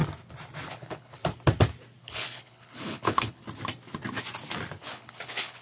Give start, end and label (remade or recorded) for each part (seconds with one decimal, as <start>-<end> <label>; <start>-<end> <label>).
0.0-0.7 recorded; 0.7-1.2 remade; 1.2-2.0 recorded; 2.0-3.4 remade; 3.4-4.8 recorded; 4.8-5.6 remade